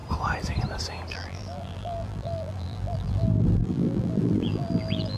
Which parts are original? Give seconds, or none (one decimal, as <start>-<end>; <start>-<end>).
0.0-1.1